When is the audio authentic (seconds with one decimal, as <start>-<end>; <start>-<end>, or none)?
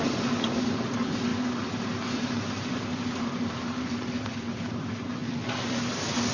0.0-6.3